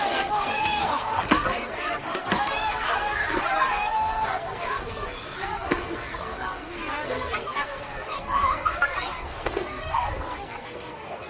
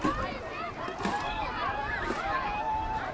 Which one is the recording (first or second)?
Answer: second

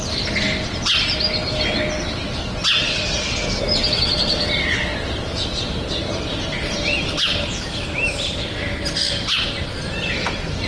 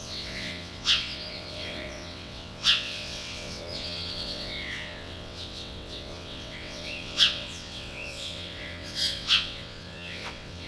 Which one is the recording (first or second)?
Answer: first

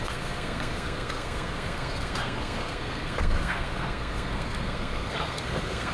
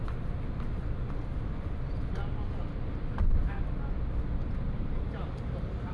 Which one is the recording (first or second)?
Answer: second